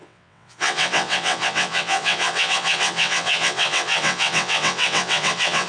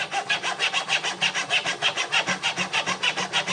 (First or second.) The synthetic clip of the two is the first